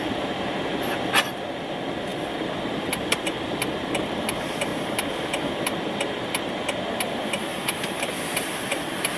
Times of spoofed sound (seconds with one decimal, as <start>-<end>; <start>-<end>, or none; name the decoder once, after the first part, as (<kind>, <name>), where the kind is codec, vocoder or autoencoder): 2.1-4.3 (vocoder, BigVGAN v2); 7.5-9.2